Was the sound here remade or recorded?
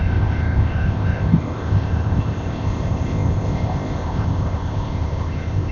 remade